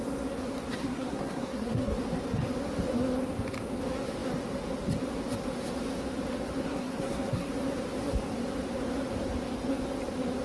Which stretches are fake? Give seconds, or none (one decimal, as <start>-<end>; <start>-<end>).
0.8-1.9; 6.6-7.5